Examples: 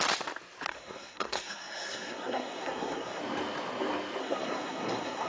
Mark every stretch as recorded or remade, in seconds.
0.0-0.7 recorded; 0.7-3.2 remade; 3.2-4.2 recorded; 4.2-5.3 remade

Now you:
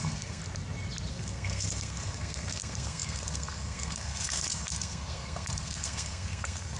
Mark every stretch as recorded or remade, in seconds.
0.0-0.4 remade; 0.4-1.1 recorded; 1.1-6.8 remade

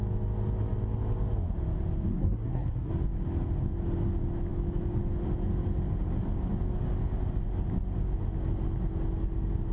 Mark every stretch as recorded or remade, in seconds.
0.0-2.1 recorded; 2.1-2.9 remade; 2.9-9.7 recorded

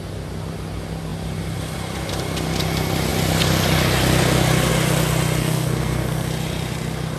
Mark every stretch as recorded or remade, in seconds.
0.0-5.4 recorded; 5.4-6.3 remade; 6.3-7.2 recorded

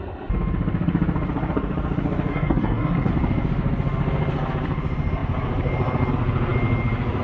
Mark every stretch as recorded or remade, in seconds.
0.0-2.3 recorded; 2.3-3.1 remade; 3.1-7.2 recorded

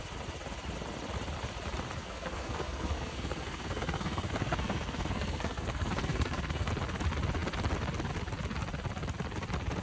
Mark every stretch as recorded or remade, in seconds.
0.0-2.0 recorded; 2.0-6.7 remade; 6.7-9.8 recorded

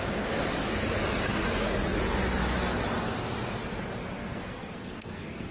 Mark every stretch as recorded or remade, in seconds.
0.0-4.2 recorded; 4.2-5.5 remade